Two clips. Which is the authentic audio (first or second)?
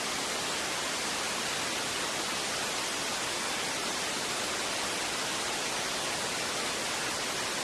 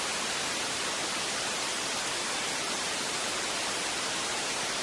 first